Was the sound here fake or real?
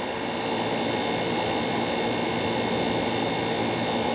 real